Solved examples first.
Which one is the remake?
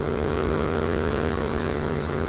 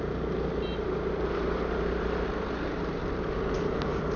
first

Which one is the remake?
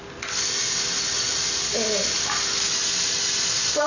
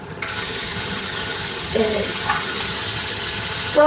second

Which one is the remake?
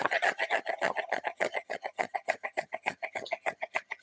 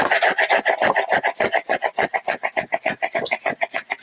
first